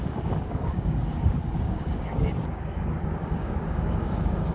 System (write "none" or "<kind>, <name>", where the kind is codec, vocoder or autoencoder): codec, DAC